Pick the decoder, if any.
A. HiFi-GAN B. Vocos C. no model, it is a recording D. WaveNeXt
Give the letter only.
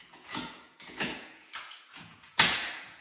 B